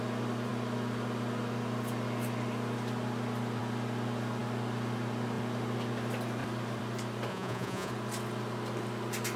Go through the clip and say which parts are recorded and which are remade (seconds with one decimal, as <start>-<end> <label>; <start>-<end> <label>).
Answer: 0.0-7.3 recorded; 7.3-7.9 remade; 7.9-9.4 recorded